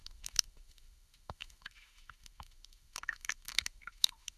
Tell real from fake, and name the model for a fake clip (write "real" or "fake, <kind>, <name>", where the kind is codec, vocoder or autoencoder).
fake, autoencoder, DAC-VAE